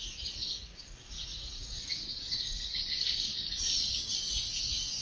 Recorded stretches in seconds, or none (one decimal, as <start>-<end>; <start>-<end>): 2.7-4.3